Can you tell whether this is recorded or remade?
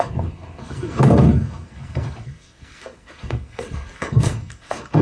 remade